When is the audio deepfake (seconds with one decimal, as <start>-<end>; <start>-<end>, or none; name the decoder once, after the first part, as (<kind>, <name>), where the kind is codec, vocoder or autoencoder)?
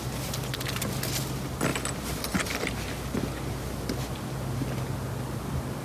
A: none